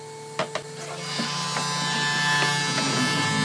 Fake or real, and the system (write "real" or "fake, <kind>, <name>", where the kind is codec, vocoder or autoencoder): real